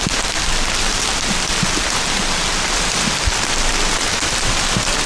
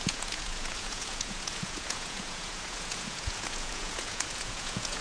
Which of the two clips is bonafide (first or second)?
first